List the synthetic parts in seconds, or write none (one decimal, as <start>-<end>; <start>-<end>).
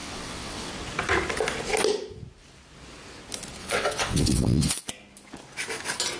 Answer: 0.0-0.7; 3.6-4.9